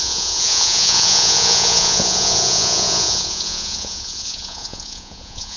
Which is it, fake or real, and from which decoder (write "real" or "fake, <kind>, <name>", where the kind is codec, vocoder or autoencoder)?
fake, vocoder, Vocos